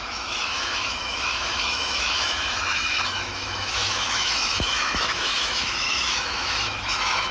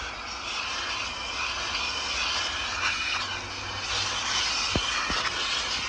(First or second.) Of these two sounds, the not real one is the first